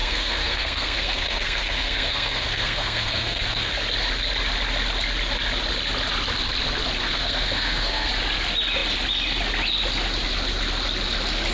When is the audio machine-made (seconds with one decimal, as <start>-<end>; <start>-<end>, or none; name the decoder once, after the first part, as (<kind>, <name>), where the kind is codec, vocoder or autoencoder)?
0.0-3.7 (codec, SNAC); 7.0-8.1